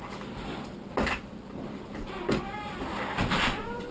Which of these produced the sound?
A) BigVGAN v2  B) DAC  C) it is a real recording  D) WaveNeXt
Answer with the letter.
A